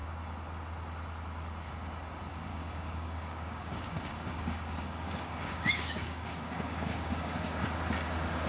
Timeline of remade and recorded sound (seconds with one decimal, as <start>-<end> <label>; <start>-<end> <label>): 0.0-2.5 recorded; 2.5-7.6 remade; 7.6-8.5 recorded

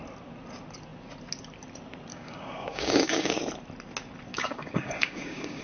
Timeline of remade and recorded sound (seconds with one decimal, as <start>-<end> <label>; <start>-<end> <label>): 0.0-2.1 recorded; 2.1-3.4 remade; 3.4-4.3 recorded; 4.3-5.6 remade

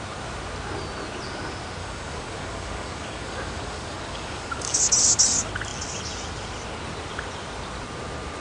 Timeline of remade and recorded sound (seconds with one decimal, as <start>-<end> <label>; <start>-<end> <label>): 0.0-1.8 recorded; 1.8-4.8 remade; 4.8-8.4 recorded

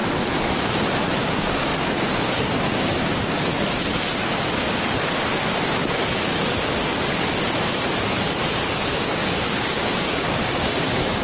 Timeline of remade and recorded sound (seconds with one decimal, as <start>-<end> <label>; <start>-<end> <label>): 0.0-1.2 recorded; 1.2-3.5 remade; 3.5-8.0 recorded; 8.0-11.2 remade

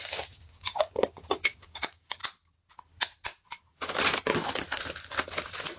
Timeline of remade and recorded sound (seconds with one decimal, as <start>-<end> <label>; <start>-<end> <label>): 0.0-2.2 remade; 2.2-5.8 recorded

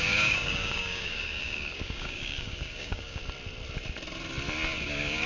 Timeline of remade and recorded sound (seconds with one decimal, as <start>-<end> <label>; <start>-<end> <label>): 0.0-3.2 remade; 3.2-4.8 recorded; 4.8-5.3 remade

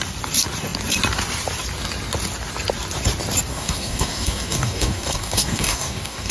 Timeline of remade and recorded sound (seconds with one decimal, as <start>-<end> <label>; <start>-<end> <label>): 0.0-3.5 recorded; 3.5-6.3 remade